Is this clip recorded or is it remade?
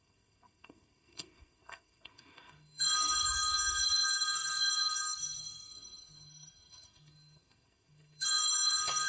remade